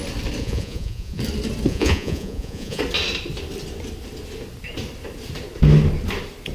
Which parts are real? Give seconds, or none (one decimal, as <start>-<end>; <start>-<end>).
0.0-0.4; 1.2-1.7; 2.8-6.5